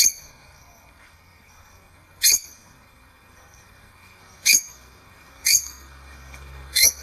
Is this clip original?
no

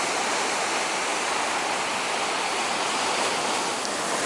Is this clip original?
yes